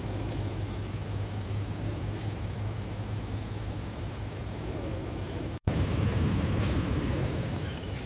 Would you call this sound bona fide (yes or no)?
no